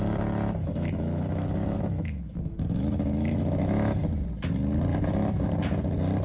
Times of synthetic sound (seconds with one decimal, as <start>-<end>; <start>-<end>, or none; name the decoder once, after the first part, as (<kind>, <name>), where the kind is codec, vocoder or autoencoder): 0.6-4.0 (autoencoder, DAC-VAE); 4.9-5.5

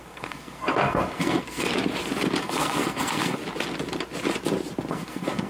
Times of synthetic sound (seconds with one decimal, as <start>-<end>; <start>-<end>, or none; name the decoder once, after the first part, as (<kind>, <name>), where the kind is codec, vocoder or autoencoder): 0.0-1.7 (codec, SNAC); 2.4-3.4; 4.9-5.5